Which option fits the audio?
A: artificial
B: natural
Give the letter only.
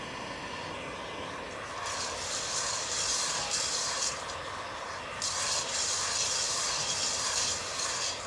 B